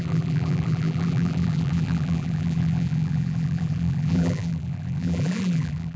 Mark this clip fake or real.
fake